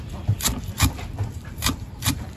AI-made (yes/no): yes